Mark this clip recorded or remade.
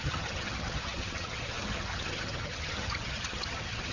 remade